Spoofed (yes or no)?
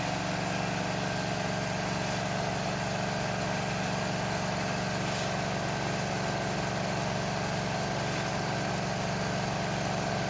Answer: no